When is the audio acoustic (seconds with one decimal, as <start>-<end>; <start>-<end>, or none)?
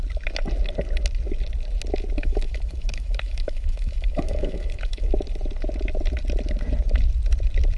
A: 0.0-2.2; 5.1-7.8